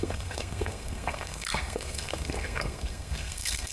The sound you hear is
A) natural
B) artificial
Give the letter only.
B